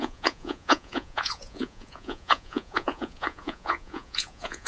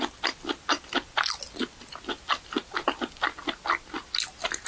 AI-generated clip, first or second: first